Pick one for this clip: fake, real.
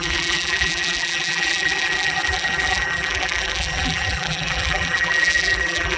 fake